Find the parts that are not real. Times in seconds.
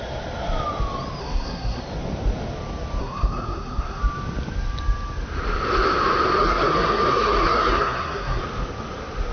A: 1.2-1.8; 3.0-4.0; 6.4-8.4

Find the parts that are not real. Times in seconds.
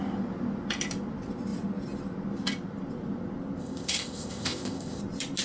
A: 3.6-5.0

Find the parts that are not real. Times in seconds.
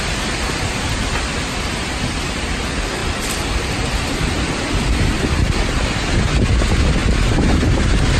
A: 3.0-4.6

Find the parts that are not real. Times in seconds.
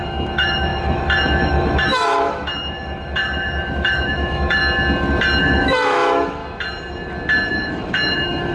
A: 0.0-4.6; 5.4-6.4; 7.5-8.5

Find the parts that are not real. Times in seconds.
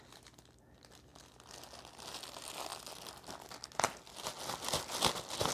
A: none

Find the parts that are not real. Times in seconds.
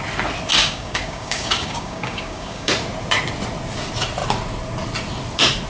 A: 0.6-2.7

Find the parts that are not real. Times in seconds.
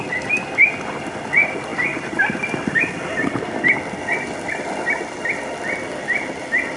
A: none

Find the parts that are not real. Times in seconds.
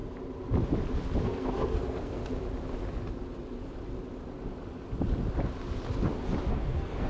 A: 1.2-2.2; 6.5-7.1